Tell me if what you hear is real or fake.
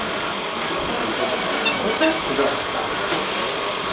real